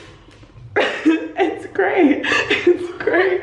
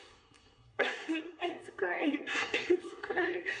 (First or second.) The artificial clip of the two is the second